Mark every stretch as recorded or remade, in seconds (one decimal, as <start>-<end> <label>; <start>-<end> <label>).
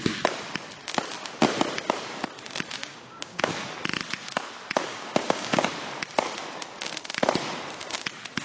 0.0-2.8 recorded; 2.8-3.5 remade; 3.5-4.8 recorded; 4.8-5.6 remade; 5.6-8.4 recorded